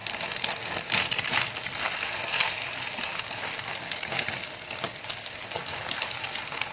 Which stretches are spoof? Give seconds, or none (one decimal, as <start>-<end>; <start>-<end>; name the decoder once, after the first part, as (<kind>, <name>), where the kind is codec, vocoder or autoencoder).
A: none